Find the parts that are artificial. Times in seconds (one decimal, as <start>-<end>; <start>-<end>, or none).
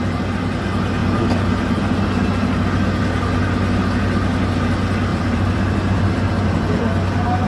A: 5.1-6.5